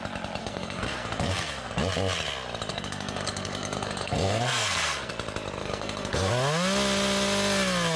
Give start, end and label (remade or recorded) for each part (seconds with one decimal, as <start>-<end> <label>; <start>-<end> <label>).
0.0-0.4 recorded; 0.4-1.7 remade; 1.7-2.7 recorded; 2.7-5.1 remade; 5.1-5.6 recorded; 5.6-6.3 remade; 6.3-8.0 recorded